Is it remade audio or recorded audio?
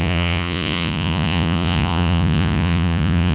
remade